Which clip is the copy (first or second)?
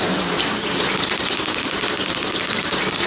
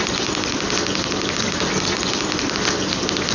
first